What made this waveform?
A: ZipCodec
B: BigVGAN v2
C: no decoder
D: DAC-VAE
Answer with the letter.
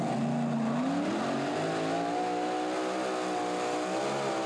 C